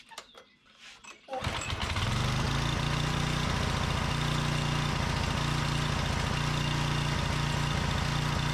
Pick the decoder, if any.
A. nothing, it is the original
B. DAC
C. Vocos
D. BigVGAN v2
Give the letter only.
A